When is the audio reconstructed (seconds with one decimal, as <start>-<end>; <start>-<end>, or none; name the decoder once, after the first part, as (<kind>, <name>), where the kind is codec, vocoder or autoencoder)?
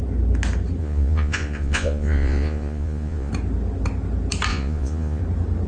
0.8-3.3 (vocoder, Vocos); 4.5-5.2